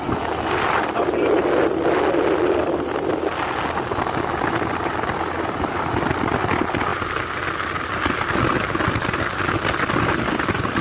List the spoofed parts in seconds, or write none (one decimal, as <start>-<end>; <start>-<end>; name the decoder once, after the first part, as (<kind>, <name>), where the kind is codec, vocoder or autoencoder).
none